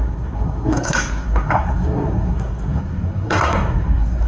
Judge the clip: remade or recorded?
remade